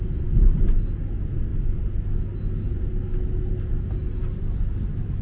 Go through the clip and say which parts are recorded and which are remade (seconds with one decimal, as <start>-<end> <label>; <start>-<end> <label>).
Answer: 0.0-5.2 recorded